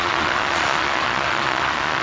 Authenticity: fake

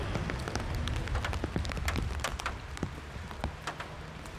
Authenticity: real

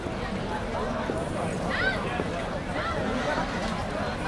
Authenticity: real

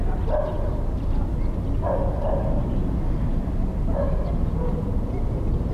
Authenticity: real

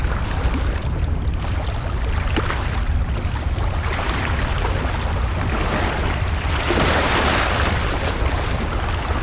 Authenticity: real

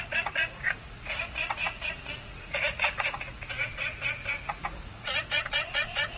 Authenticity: fake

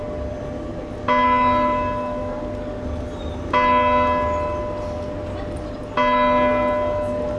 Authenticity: real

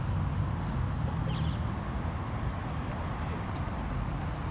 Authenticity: real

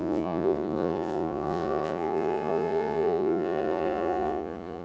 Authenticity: fake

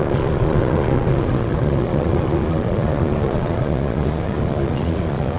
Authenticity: fake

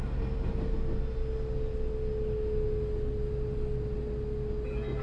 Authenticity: real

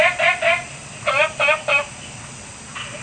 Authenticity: real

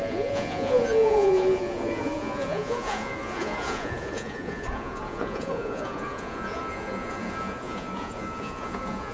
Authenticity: fake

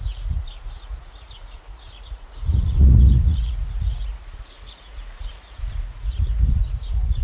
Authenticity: fake